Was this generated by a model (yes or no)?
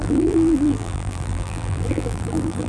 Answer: yes